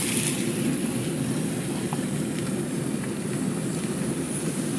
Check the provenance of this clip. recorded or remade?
recorded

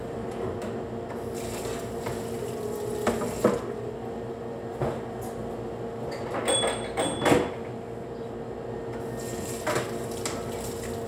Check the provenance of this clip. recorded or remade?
recorded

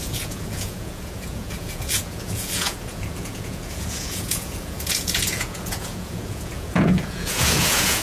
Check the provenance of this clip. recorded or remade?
remade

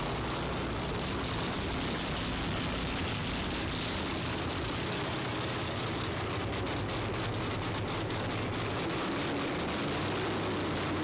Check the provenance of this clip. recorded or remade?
recorded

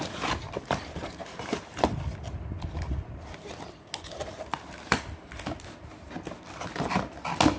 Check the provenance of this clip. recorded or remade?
recorded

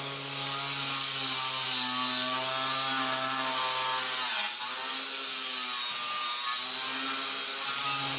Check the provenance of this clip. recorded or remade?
recorded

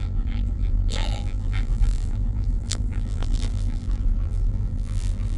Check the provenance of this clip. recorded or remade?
remade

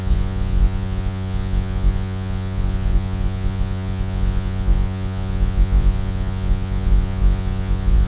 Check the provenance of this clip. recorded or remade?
remade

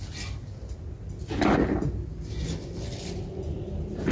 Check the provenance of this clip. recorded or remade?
recorded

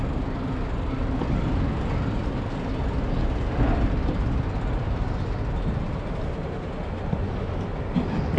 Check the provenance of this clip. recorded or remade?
recorded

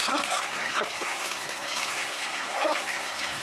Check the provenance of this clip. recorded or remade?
remade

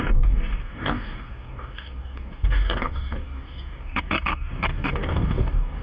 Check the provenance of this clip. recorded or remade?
remade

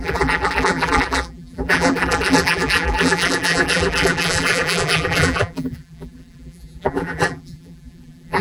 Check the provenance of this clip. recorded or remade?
remade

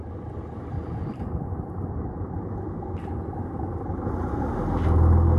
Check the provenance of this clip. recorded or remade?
recorded